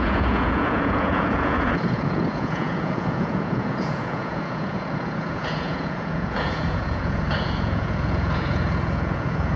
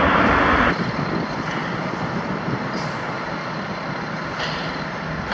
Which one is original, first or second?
second